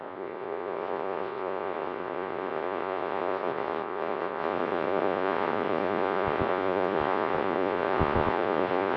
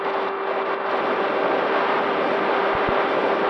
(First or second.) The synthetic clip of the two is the first